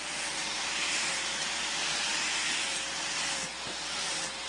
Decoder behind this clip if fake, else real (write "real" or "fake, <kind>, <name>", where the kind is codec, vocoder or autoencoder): real